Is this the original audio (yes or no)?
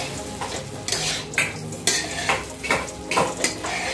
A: yes